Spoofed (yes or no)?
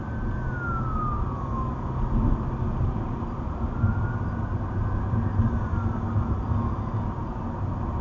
no